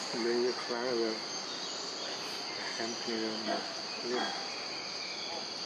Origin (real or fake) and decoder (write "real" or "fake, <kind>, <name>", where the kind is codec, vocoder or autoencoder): real